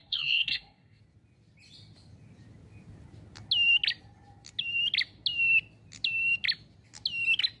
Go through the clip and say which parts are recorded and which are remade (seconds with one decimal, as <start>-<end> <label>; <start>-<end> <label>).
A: 0.0-1.0 remade; 1.0-7.6 recorded